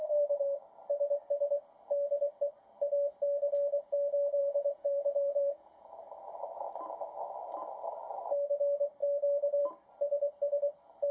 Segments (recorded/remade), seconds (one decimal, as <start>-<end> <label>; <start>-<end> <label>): 0.0-4.4 recorded; 4.4-6.4 remade; 6.4-11.1 recorded